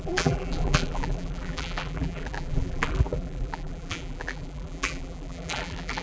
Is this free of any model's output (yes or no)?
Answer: no